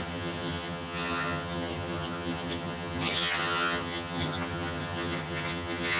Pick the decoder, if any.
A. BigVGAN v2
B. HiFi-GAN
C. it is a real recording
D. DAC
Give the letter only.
B